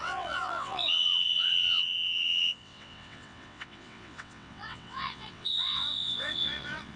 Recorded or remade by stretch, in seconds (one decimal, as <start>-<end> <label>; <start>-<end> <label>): 0.0-7.0 remade